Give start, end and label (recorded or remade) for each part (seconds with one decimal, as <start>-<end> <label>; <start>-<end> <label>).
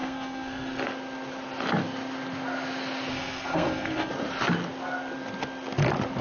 0.0-0.8 remade; 0.8-3.1 recorded; 3.1-4.1 remade; 4.1-6.2 recorded